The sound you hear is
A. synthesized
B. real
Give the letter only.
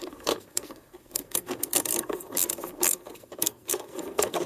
A